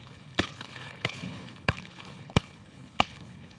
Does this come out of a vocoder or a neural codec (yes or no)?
yes